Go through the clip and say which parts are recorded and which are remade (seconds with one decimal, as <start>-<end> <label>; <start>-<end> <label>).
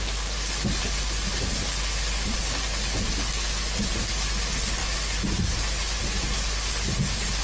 0.0-7.4 recorded